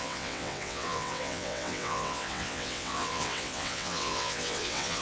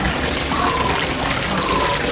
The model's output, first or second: first